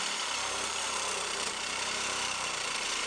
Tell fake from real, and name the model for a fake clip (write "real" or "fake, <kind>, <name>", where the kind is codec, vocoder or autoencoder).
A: fake, vocoder, BigVGAN v2